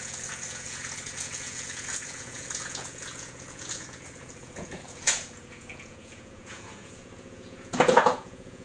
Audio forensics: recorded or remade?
remade